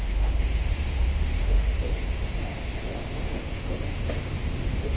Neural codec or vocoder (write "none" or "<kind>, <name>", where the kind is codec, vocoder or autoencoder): autoencoder, DAC-VAE